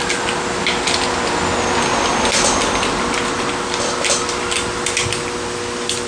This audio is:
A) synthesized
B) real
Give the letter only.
B